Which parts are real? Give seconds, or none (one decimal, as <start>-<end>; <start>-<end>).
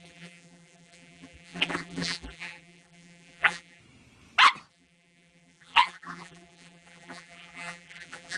3.8-4.7